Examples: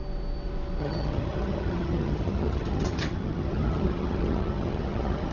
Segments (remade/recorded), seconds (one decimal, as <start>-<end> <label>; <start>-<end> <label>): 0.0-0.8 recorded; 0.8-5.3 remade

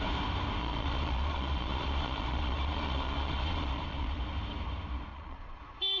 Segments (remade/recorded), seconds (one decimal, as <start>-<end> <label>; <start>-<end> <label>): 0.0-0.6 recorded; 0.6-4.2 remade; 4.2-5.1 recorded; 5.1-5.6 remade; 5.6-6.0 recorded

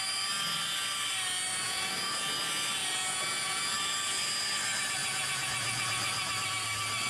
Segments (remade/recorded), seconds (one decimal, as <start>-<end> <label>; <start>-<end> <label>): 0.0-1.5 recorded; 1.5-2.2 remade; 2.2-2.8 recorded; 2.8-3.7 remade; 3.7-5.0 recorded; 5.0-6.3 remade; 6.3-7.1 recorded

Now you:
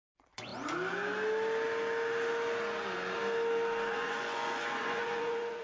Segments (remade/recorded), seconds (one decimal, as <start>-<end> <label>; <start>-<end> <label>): 0.0-0.5 remade; 0.5-3.9 recorded; 3.9-5.6 remade

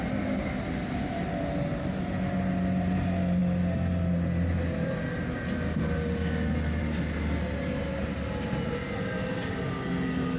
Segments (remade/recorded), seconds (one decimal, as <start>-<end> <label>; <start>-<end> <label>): 0.0-10.4 recorded

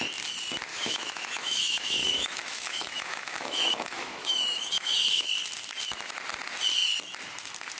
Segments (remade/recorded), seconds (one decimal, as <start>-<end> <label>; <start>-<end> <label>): 0.0-0.7 recorded; 0.7-5.3 remade; 5.3-7.8 recorded

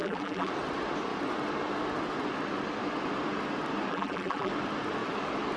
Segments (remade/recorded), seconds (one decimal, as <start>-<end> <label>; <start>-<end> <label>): 0.0-0.5 remade; 0.5-3.9 recorded; 3.9-4.5 remade; 4.5-5.6 recorded

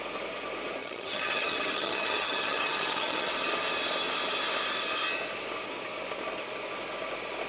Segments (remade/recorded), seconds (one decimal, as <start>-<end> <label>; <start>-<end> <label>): 0.0-0.8 recorded; 0.8-3.3 remade; 3.3-7.5 recorded